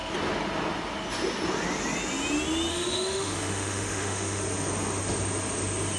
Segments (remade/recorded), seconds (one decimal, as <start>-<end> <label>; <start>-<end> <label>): 0.0-2.7 recorded; 2.7-4.4 remade; 4.4-6.0 recorded